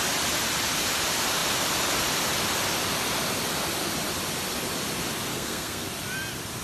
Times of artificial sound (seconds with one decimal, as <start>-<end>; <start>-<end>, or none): 5.3-5.9